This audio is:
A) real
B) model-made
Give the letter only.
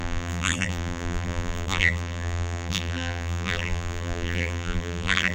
B